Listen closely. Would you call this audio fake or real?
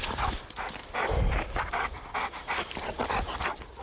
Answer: real